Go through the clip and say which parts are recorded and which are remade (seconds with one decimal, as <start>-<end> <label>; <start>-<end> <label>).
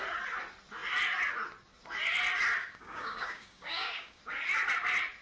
0.0-2.6 recorded; 2.6-4.2 remade; 4.2-5.2 recorded